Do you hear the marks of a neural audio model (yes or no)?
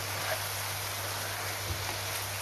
no